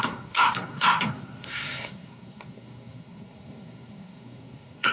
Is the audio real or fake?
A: fake